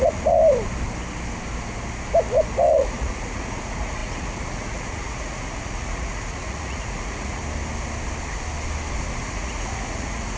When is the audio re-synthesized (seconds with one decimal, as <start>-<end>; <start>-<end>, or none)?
0.0-0.4; 2.6-7.4; 9.2-10.4

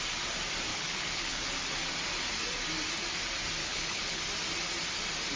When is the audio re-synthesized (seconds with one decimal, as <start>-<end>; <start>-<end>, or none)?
0.7-1.4; 3.6-4.2

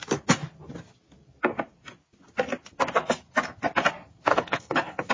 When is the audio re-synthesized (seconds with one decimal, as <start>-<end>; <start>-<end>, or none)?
4.3-5.1

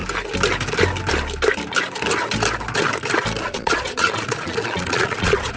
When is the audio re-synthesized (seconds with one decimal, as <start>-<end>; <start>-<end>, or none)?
3.4-5.6

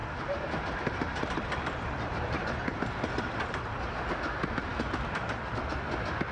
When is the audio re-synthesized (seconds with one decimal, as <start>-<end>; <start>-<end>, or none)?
none

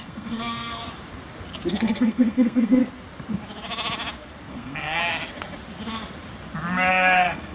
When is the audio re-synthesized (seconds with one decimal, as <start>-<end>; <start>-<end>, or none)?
0.0-0.8; 1.8-2.8; 4.5-5.0; 6.9-7.5